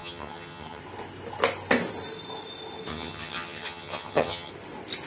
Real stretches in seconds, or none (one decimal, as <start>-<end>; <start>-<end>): 0.8-2.9; 4.5-5.1

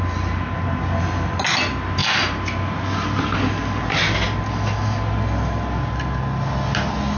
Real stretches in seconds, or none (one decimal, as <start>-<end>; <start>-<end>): 0.0-7.2